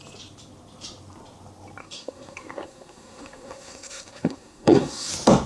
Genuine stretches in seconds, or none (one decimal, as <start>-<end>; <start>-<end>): 0.0-1.8; 5.1-5.5